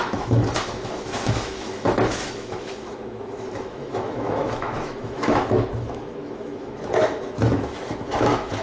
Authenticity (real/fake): fake